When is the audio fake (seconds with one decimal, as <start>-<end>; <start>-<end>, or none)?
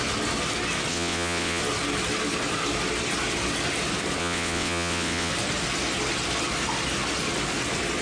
0.9-1.6; 4.2-5.3